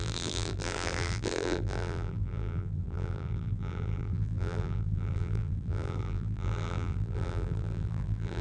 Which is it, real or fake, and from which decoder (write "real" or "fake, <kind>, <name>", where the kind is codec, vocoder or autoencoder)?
fake, vocoder, BigVGAN v2